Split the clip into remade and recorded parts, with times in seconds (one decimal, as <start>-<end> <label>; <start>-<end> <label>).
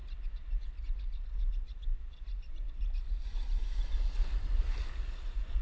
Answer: 0.0-5.6 recorded